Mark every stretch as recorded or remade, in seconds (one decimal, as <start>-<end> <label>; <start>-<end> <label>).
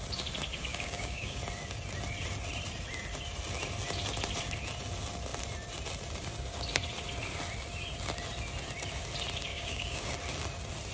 0.0-0.7 recorded; 0.7-1.4 remade; 1.4-9.5 recorded; 9.5-10.1 remade; 10.1-10.9 recorded